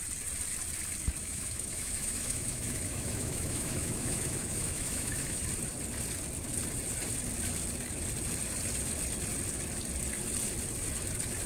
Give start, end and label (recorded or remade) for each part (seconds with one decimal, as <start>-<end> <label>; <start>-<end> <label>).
0.0-1.2 recorded; 1.2-5.4 remade; 5.4-11.5 recorded